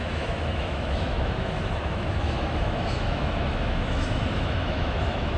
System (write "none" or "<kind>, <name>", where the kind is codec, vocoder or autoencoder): autoencoder, DAC-VAE